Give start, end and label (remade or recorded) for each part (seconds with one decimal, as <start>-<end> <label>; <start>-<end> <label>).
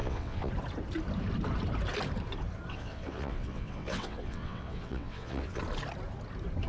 0.0-0.5 remade; 0.5-2.7 recorded; 2.7-5.6 remade; 5.6-6.7 recorded